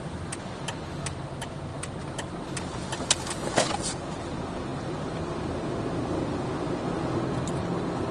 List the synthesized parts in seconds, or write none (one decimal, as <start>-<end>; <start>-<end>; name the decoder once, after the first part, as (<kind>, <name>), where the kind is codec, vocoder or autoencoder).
none